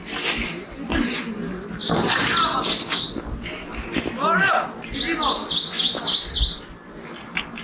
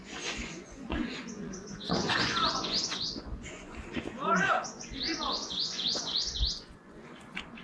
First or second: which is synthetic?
second